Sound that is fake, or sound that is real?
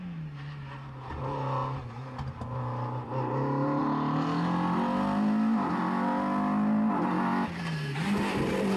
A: real